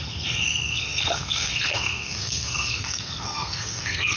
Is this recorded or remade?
remade